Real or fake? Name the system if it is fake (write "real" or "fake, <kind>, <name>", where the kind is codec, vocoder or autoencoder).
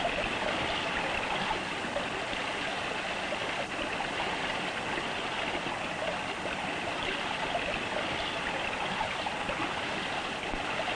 real